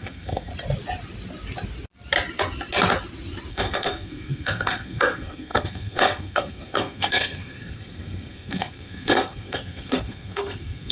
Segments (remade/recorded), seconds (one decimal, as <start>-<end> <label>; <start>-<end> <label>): 0.0-0.5 remade; 0.5-3.5 recorded; 3.5-10.9 remade